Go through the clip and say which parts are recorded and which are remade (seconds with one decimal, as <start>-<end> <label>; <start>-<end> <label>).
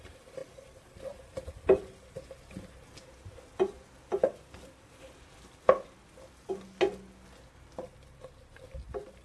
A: 0.0-9.2 recorded